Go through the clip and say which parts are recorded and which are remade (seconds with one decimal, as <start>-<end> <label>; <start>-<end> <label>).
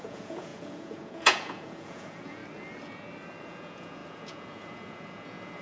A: 0.0-2.4 remade; 2.4-3.4 recorded; 3.4-5.6 remade